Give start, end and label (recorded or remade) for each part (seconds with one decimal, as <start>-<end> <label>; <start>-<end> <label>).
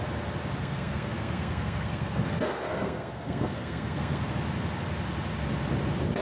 0.0-0.6 recorded; 0.6-4.3 remade; 4.3-6.2 recorded